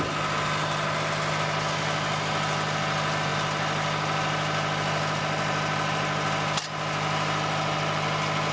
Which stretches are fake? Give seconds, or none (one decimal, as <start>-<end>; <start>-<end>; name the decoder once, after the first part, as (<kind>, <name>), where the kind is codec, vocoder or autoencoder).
none